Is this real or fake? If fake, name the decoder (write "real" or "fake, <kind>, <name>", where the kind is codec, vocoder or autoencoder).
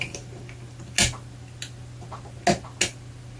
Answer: real